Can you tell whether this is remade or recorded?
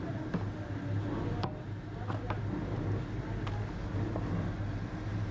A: recorded